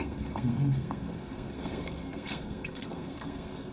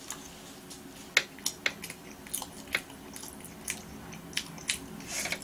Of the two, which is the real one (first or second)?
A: second